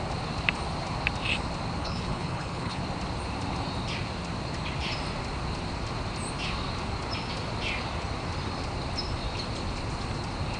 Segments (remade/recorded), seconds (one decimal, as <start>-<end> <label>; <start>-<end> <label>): 0.0-1.8 recorded; 1.8-2.8 remade; 2.8-10.6 recorded